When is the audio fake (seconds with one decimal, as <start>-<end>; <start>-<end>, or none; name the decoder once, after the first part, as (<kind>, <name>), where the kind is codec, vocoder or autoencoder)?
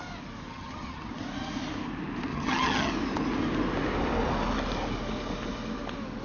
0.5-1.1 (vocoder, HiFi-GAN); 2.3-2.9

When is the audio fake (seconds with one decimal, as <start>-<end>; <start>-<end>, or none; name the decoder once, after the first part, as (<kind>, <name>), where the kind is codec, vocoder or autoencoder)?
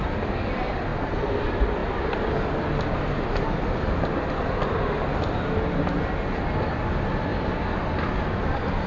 none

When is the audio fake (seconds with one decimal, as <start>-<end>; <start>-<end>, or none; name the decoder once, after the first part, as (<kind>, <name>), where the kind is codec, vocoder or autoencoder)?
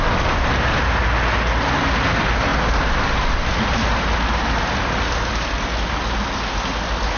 none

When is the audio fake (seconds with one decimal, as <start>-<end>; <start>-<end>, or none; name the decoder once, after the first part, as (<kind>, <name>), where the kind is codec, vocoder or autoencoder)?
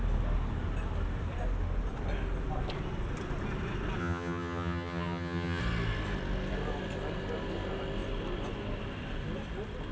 4.0-5.6 (vocoder, HiFi-GAN)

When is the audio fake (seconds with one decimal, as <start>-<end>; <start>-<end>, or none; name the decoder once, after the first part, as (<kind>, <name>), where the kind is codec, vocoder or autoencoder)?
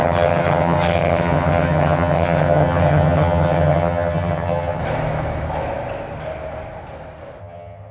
0.0-4.8 (vocoder, HiFi-GAN); 7.4-7.9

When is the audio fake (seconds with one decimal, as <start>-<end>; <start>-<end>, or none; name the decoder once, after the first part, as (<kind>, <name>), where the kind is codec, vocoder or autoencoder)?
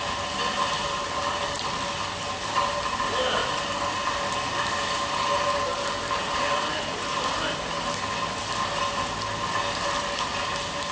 none